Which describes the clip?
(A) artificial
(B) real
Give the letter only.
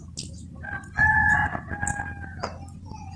B